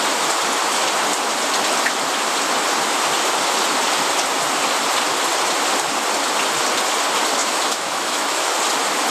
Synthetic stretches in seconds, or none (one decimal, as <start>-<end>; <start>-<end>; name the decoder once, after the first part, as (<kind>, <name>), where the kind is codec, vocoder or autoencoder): 7.4-8.5 (autoencoder, DAC-VAE)